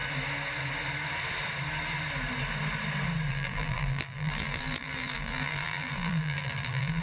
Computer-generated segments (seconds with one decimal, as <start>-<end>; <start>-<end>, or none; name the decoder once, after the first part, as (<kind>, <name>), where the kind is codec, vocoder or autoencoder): 3.3-7.0 (vocoder, BigVGAN v2)